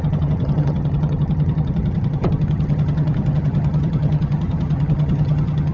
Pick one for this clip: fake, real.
fake